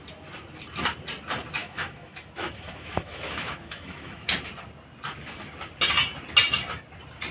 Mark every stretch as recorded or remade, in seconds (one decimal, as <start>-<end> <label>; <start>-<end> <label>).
0.0-1.6 recorded; 1.6-4.3 remade; 4.3-7.3 recorded